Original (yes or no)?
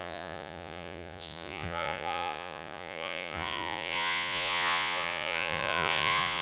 no